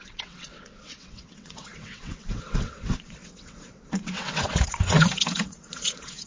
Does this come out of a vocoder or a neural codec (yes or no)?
yes